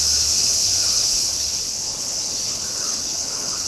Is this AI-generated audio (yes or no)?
yes